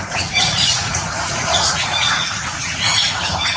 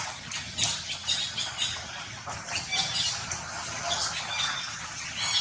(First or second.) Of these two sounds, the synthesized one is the first